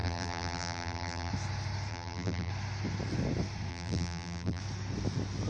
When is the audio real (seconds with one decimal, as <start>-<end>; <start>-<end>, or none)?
1.3-1.9; 2.5-3.7; 4.6-5.5